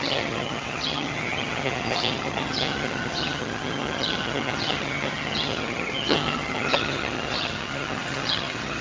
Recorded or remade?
remade